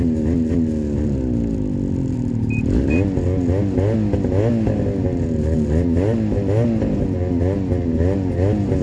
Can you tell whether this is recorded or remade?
recorded